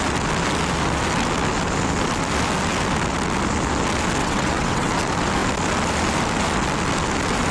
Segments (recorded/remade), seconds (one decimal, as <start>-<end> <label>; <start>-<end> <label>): 0.0-4.2 recorded; 4.2-4.9 remade; 4.9-7.5 recorded